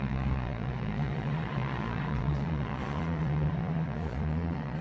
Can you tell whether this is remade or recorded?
remade